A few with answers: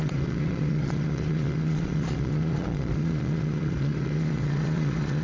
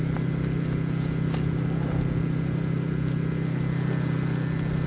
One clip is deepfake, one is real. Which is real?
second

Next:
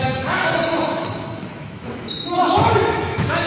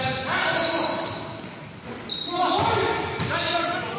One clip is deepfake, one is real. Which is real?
second